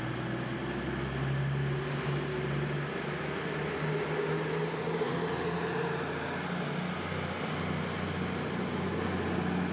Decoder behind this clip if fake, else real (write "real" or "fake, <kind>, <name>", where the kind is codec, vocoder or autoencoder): real